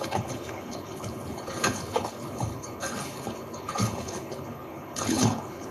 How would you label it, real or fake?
fake